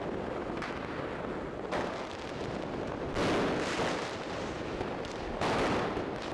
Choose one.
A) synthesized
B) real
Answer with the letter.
B